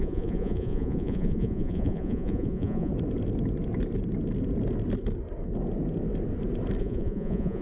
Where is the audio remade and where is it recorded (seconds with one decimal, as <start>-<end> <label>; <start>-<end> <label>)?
0.0-2.9 remade; 2.9-6.8 recorded; 6.8-7.6 remade